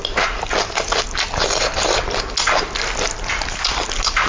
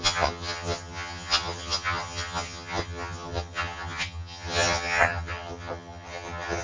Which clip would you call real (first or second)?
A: first